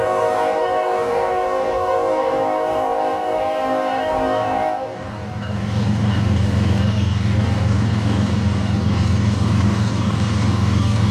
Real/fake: fake